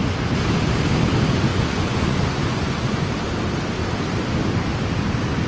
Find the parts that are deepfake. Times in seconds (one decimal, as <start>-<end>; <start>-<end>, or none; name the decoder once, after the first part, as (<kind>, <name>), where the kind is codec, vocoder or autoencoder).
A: 1.5-3.1 (vocoder, Vocos)